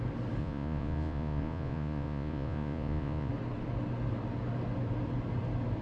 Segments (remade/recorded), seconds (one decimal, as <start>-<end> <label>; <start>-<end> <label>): 0.0-0.4 recorded; 0.4-3.3 remade; 3.3-5.8 recorded